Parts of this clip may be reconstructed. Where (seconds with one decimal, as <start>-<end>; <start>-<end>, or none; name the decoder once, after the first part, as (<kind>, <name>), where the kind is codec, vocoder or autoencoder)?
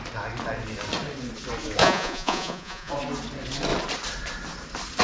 1.8-2.9 (vocoder, Vocos)